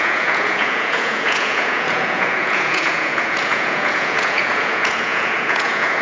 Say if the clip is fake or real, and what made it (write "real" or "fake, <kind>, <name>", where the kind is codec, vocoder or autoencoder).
fake, vocoder, Vocos